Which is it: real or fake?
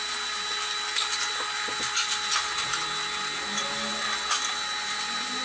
real